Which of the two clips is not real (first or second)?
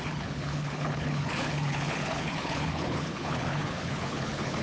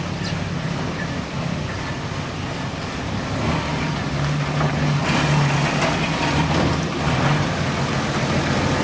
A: first